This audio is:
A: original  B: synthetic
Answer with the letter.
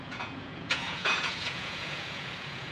B